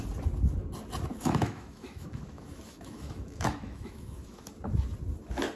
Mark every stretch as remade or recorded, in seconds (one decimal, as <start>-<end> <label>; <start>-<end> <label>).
0.0-1.1 recorded; 1.1-4.5 remade; 4.5-5.6 recorded